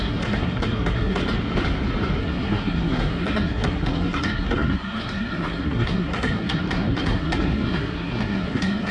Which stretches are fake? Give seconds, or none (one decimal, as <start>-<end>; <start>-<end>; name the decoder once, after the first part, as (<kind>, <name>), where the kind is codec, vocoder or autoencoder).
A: 0.0-1.2 (codec, SNAC); 2.2-8.9